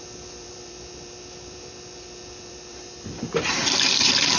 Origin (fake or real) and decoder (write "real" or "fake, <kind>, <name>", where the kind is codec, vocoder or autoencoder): fake, vocoder, BigVGAN v2